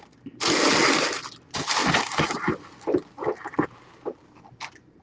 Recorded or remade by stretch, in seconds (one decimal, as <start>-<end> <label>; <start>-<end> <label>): 0.0-5.0 recorded